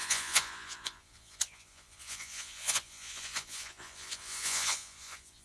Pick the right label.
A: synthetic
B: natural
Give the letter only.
A